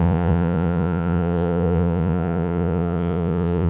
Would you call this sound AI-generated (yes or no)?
yes